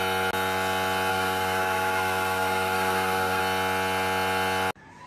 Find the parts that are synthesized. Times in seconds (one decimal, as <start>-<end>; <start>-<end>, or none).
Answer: 1.1-3.4